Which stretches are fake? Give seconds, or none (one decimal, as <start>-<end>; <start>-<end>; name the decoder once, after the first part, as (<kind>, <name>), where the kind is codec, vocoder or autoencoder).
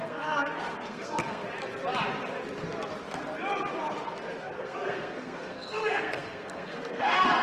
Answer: 0.0-1.4 (codec, SNAC); 4.6-7.4